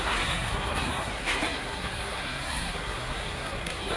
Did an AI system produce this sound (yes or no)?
yes